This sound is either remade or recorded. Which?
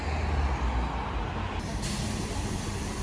recorded